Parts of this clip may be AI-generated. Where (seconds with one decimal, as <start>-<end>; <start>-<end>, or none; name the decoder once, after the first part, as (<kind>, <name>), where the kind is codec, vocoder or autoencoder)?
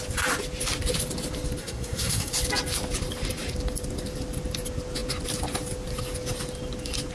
1.6-2.3 (codec, SNAC)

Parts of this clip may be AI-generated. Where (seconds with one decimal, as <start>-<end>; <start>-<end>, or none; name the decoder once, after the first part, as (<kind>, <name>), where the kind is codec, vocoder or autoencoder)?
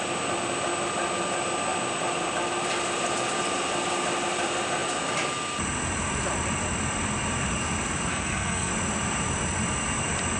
8.1-8.7 (codec, SNAC)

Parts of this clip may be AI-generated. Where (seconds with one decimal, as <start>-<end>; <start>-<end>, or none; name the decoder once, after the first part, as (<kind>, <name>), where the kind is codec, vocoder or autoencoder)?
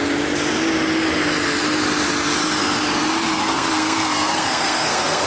3.4-5.3 (codec, SNAC)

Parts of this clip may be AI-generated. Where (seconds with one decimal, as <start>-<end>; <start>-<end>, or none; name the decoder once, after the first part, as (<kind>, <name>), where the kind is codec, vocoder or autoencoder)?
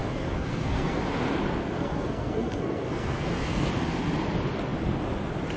0.0-1.0 (codec, SNAC); 1.6-3.7